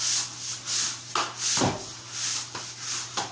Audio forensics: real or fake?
real